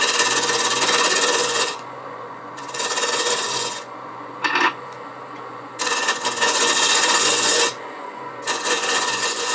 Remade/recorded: remade